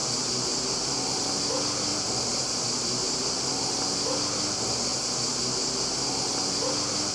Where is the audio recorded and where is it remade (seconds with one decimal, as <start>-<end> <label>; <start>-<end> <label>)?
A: 0.0-1.3 remade; 1.3-1.9 recorded; 1.9-3.5 remade; 3.5-7.1 recorded